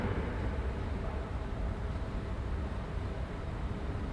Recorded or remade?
remade